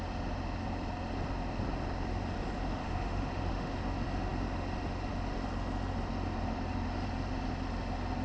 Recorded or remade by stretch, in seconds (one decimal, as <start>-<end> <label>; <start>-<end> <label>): 0.0-2.8 recorded; 2.8-3.7 remade; 3.7-8.2 recorded